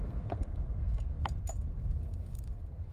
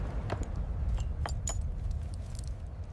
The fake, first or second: first